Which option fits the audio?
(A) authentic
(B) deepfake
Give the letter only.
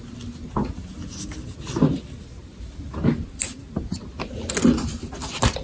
A